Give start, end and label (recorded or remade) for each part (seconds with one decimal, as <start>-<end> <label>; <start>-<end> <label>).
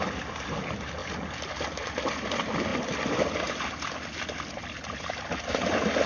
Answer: 0.0-2.7 recorded; 2.7-3.5 remade; 3.5-6.1 recorded